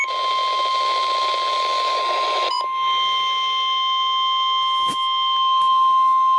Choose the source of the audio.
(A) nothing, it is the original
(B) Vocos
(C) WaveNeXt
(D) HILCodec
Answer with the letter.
A